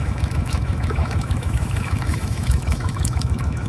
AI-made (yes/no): yes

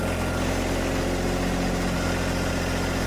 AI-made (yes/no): no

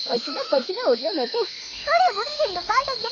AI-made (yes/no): yes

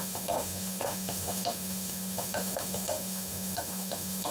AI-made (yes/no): yes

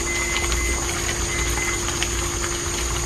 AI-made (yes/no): no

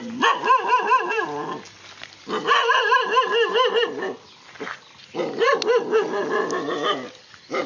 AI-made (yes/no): no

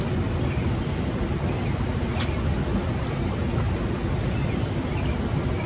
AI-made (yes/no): no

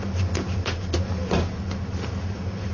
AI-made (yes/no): no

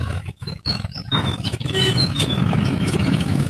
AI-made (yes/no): yes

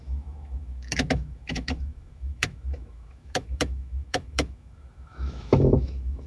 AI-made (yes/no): yes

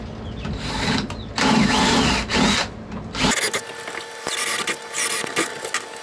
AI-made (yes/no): no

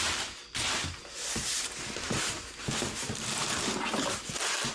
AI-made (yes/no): no